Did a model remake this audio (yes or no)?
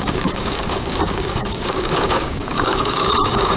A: yes